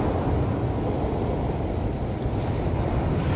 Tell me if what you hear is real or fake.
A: real